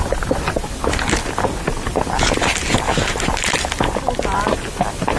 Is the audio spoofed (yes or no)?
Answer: no